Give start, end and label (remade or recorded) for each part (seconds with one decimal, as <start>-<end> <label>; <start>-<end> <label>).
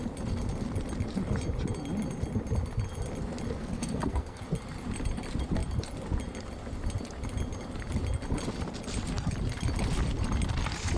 0.0-3.6 recorded; 3.6-4.4 remade; 4.4-11.0 recorded